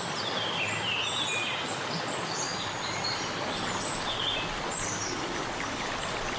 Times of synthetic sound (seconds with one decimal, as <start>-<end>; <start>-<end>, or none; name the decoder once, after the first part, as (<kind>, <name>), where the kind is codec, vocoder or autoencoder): none